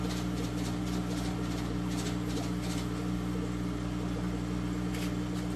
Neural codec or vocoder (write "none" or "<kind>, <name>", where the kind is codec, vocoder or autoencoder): none